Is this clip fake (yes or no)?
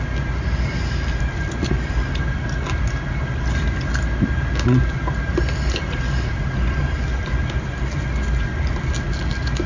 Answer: no